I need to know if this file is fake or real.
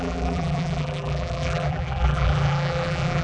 fake